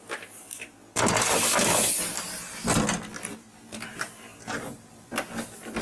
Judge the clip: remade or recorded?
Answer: recorded